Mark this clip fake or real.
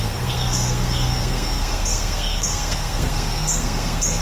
fake